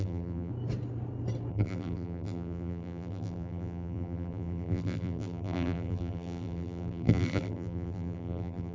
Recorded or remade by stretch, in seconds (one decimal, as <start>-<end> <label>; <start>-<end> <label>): 0.0-0.5 remade; 0.5-1.5 recorded; 1.5-8.7 remade